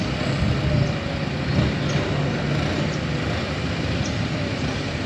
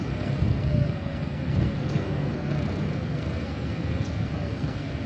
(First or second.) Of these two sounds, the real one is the first